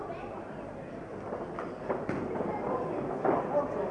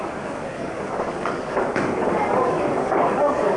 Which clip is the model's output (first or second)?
second